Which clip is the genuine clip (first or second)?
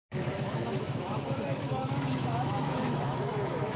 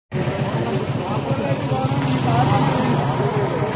second